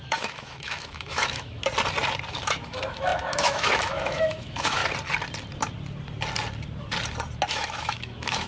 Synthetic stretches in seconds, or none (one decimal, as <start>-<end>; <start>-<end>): 0.0-1.6; 2.3-4.8; 7.5-8.5